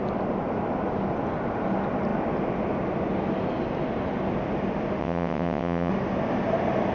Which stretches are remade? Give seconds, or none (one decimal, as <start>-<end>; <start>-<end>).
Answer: 5.0-5.9